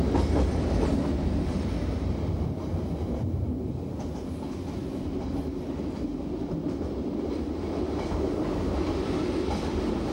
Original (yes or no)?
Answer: yes